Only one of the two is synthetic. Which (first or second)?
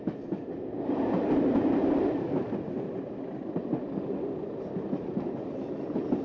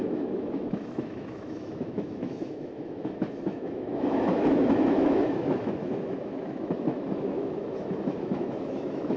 second